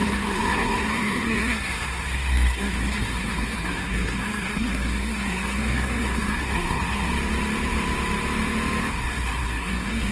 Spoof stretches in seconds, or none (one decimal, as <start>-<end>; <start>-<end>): 0.0-7.1; 8.9-10.1